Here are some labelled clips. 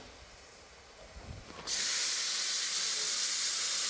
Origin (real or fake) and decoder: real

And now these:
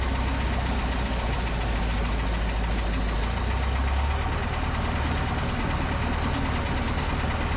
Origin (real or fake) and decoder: real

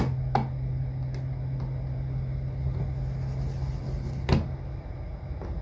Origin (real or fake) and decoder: real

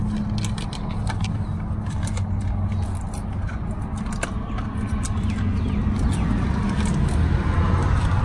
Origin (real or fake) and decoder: real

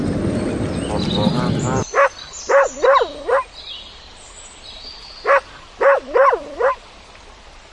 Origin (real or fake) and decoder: real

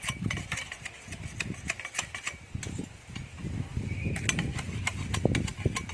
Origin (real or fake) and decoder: real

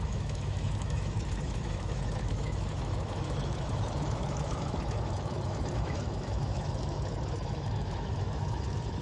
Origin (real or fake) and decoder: fake, autoencoder, DAC-VAE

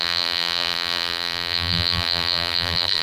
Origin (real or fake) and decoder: fake, vocoder, BigVGAN v2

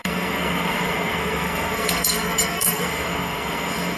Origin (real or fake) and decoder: fake, codec, SNAC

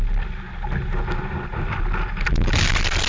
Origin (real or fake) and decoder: real